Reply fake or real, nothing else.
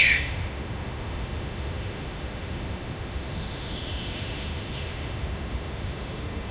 fake